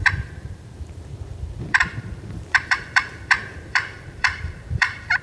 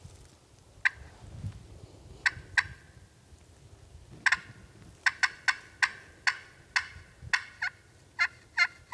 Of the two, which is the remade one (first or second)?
first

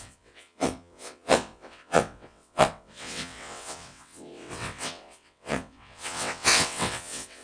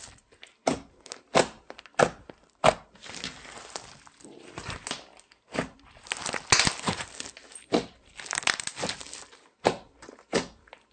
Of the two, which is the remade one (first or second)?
first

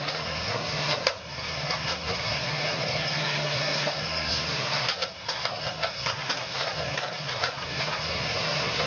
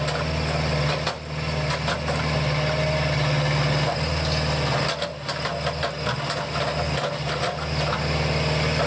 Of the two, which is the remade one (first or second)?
first